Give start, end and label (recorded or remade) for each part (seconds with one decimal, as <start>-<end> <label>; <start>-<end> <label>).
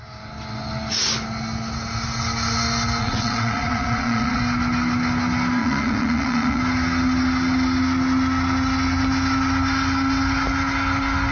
0.0-3.0 recorded; 3.0-4.4 remade; 4.4-5.6 recorded; 5.6-6.6 remade; 6.6-11.3 recorded